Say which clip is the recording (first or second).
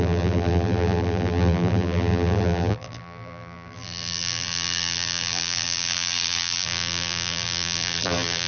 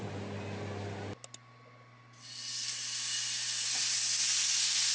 second